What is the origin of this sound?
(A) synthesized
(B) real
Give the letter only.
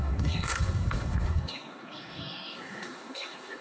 A